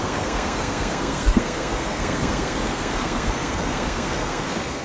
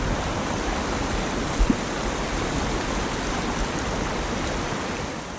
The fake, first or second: first